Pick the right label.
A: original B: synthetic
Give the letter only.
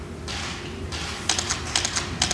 A